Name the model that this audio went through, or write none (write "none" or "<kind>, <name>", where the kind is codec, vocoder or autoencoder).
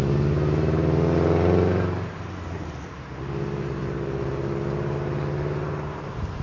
none